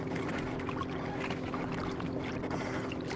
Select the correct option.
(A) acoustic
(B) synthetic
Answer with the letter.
A